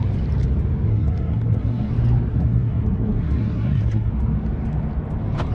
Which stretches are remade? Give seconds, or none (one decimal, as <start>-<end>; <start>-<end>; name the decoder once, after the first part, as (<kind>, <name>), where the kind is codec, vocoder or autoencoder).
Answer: 0.9-1.9 (codec, SNAC); 2.3-4.1